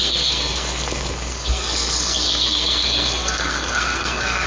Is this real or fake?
fake